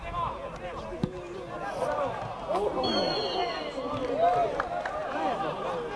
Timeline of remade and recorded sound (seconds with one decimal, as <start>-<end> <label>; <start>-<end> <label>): 0.0-5.0 recorded; 5.0-5.6 remade; 5.6-6.0 recorded